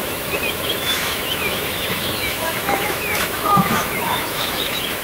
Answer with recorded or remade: remade